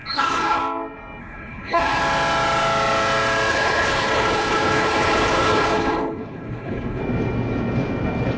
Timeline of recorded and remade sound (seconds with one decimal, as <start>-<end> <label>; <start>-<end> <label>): 0.0-0.6 remade; 0.6-1.2 recorded; 1.2-2.0 remade; 2.0-3.5 recorded; 3.5-7.0 remade; 7.0-8.4 recorded